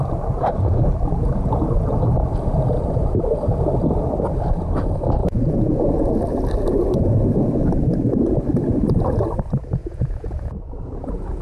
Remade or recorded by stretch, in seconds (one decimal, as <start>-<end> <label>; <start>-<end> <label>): 0.0-5.2 recorded; 5.2-5.8 remade; 5.8-9.8 recorded; 9.8-11.4 remade